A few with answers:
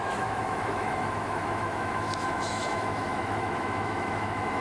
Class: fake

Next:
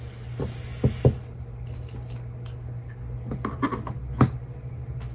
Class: real